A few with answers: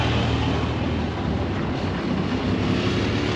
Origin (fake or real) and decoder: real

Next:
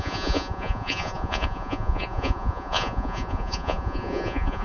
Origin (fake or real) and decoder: fake, vocoder, Vocos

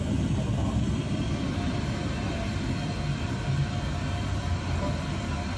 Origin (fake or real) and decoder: real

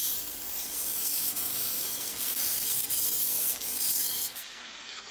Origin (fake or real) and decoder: fake, codec, SNAC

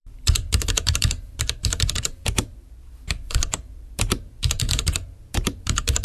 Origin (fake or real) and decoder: fake, vocoder, BigVGAN v2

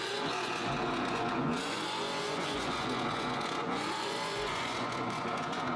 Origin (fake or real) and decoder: fake, vocoder, Vocos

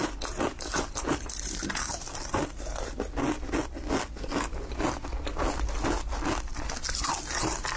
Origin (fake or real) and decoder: real